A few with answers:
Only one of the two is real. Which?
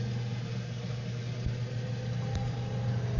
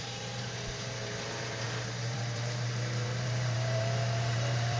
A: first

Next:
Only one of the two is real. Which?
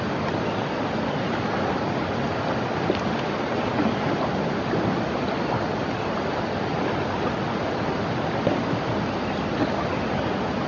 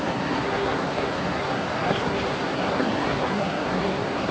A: first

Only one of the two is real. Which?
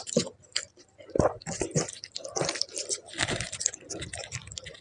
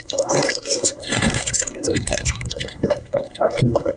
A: first